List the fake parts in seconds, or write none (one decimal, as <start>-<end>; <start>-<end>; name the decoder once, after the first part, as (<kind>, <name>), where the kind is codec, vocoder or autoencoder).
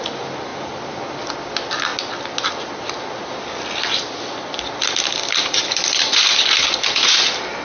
none